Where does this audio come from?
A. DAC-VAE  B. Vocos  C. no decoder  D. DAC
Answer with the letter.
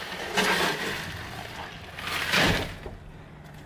C